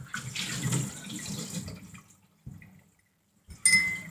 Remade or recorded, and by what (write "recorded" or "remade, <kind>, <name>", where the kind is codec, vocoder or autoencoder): recorded